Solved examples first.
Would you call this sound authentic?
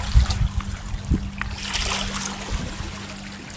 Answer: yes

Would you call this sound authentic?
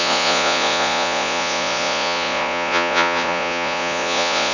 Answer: no